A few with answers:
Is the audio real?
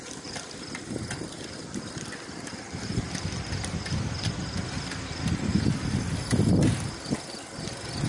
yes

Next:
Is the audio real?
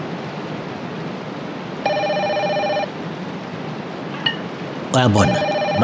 yes